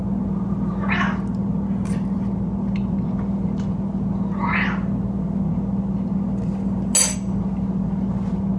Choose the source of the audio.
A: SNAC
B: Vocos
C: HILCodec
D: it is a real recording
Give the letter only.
D